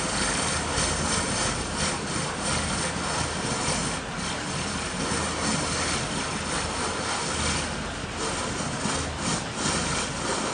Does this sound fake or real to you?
real